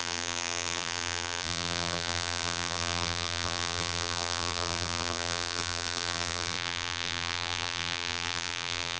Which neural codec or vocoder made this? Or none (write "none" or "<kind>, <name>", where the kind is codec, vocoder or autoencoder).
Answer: vocoder, BigVGAN v2